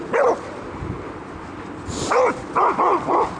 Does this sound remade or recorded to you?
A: remade